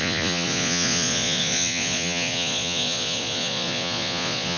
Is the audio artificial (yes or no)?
yes